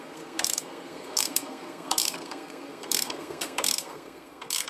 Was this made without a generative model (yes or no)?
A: no